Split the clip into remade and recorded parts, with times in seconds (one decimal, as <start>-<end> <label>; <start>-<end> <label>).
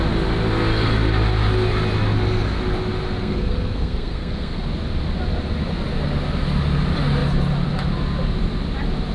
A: 0.0-3.2 recorded; 3.2-4.6 remade; 4.6-9.1 recorded